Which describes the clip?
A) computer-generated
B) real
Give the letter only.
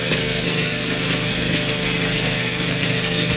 A